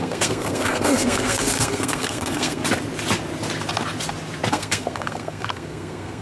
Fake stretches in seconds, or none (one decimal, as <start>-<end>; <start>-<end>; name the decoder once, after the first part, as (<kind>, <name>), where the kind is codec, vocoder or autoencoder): 0.0-2.6 (codec, SNAC); 4.5-6.2